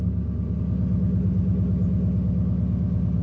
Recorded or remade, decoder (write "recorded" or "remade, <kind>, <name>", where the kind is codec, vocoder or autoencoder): recorded